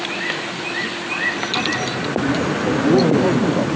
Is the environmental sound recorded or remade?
recorded